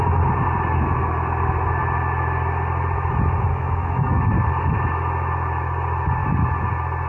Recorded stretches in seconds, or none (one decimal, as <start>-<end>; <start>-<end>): 0.0-3.5; 4.2-7.1